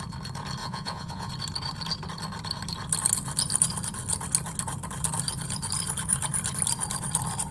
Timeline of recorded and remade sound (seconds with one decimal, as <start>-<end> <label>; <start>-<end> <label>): 0.0-0.6 recorded; 0.6-1.3 remade; 1.3-7.5 recorded

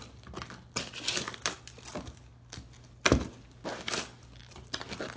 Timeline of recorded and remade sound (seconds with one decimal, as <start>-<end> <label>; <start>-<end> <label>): 0.0-5.2 recorded

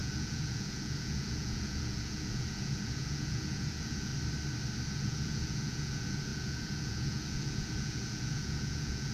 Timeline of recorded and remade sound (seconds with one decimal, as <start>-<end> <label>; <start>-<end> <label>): 0.0-4.1 remade; 4.1-4.9 recorded; 4.9-9.1 remade

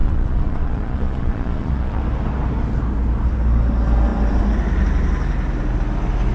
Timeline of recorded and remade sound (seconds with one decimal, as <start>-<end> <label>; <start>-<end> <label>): 0.0-2.0 remade; 2.0-6.3 recorded

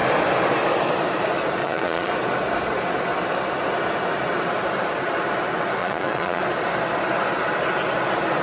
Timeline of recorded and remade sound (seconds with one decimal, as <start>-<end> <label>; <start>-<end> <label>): 0.0-1.6 recorded; 1.6-2.1 remade; 2.1-5.8 recorded; 5.8-6.4 remade; 6.4-8.4 recorded

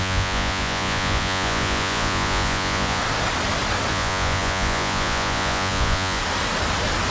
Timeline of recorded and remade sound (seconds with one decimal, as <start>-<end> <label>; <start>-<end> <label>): 0.0-3.0 remade; 3.0-3.9 recorded; 3.9-6.2 remade; 6.2-7.1 recorded

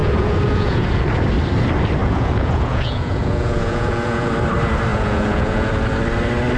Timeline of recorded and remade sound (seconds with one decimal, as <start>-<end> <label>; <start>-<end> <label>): 0.0-1.0 remade; 1.0-2.0 recorded; 2.0-4.3 remade; 4.3-4.9 recorded; 4.9-5.7 remade; 5.7-6.6 recorded